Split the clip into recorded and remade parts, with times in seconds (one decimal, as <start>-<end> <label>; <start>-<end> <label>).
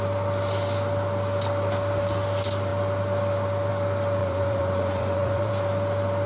0.0-4.2 recorded; 4.2-5.5 remade; 5.5-6.3 recorded